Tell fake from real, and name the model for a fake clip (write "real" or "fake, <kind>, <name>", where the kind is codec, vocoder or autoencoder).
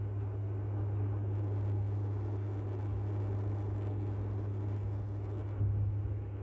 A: real